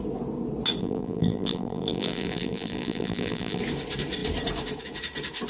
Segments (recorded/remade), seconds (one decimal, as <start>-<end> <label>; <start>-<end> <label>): 0.0-0.8 recorded; 0.8-3.6 remade; 3.6-5.5 recorded